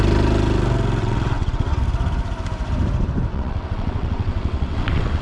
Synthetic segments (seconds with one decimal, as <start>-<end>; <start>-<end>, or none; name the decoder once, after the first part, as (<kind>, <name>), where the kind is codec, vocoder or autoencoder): 1.0-1.8 (vocoder, WaveNeXt); 3.3-5.2